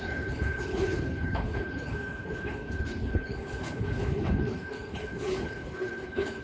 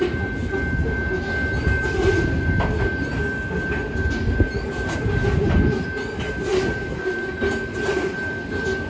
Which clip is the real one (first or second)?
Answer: second